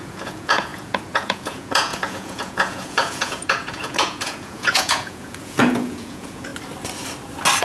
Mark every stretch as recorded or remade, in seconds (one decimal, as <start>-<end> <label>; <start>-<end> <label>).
0.0-6.5 remade; 6.5-7.6 recorded